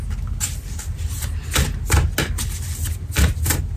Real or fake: real